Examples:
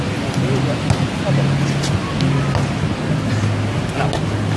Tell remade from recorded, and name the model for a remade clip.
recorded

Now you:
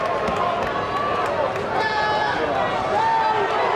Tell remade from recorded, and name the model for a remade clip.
recorded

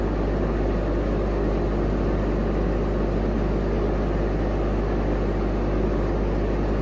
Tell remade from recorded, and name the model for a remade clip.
recorded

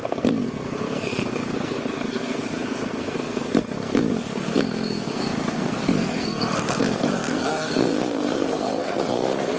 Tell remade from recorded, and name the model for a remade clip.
remade, codec, SNAC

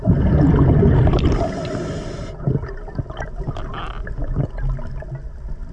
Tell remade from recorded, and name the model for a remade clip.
recorded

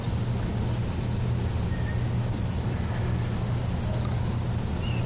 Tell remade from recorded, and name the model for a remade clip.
recorded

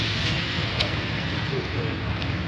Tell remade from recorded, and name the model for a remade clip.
remade, codec, SNAC